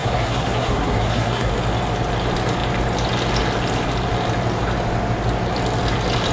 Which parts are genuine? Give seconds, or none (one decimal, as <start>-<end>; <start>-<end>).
1.5-6.3